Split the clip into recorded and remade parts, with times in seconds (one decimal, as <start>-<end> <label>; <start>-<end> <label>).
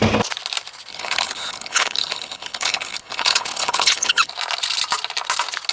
0.0-0.9 recorded; 0.9-4.3 remade; 4.3-5.7 recorded